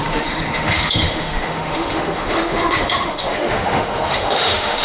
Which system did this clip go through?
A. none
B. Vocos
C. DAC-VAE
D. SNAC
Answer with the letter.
C